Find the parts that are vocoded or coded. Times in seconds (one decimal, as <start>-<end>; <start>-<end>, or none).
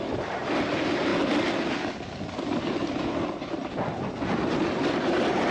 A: none